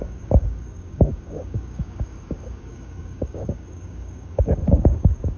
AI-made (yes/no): yes